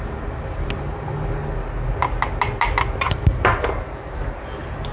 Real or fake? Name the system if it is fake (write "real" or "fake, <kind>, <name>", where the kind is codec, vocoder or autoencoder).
real